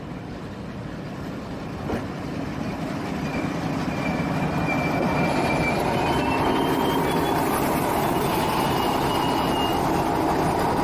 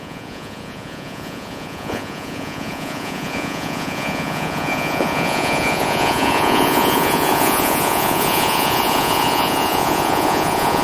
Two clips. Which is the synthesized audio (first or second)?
second